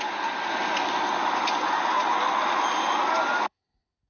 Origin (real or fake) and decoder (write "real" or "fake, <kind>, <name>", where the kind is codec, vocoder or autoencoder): real